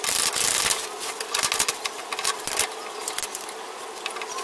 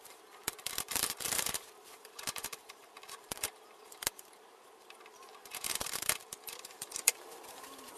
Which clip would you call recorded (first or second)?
first